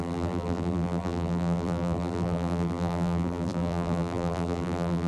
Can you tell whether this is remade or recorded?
remade